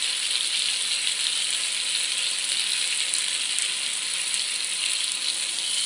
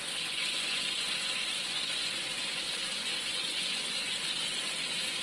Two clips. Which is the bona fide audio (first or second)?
first